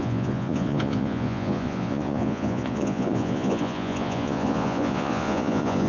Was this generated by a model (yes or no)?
yes